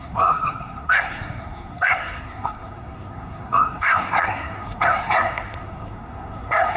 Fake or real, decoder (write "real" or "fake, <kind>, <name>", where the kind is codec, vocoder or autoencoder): fake, codec, SNAC